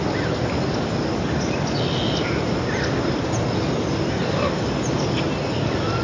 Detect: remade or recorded recorded